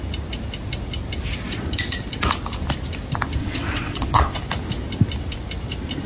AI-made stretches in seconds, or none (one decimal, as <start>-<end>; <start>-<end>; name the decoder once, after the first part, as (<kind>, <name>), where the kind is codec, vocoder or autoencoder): 3.4-4.4 (vocoder, WaveNeXt)